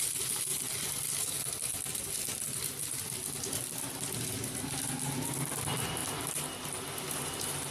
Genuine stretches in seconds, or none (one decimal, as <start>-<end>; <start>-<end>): 0.0-7.7